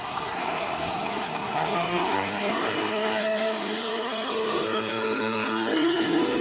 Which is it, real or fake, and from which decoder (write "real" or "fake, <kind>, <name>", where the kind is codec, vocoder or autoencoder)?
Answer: fake, codec, SNAC